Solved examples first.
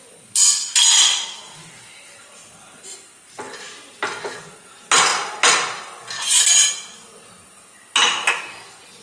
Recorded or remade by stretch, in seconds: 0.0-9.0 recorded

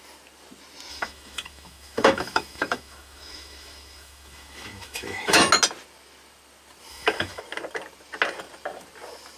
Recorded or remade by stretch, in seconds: 0.0-0.9 recorded; 0.9-5.5 remade; 5.5-6.9 recorded; 6.9-7.4 remade; 7.4-9.4 recorded

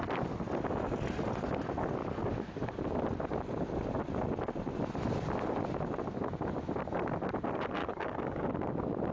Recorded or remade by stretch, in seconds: 0.0-2.0 recorded; 2.0-2.7 remade; 2.7-7.8 recorded; 7.8-8.5 remade; 8.5-9.1 recorded

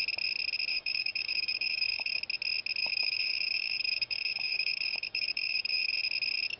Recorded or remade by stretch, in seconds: 0.0-0.7 recorded; 0.7-2.2 remade; 2.2-2.8 recorded; 2.8-5.9 remade; 5.9-6.6 recorded